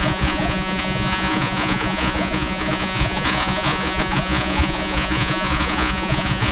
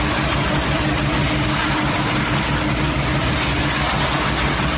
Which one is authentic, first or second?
second